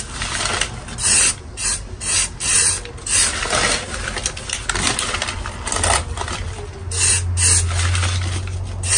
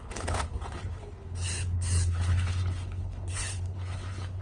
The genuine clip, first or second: first